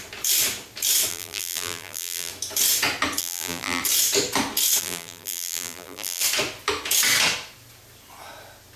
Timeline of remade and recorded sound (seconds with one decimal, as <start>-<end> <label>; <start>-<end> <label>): 0.0-1.1 recorded; 1.1-2.3 remade; 2.3-3.2 recorded; 3.2-3.8 remade; 3.8-4.8 recorded; 4.8-6.2 remade; 6.2-8.8 recorded